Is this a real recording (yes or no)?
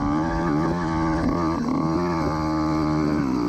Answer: yes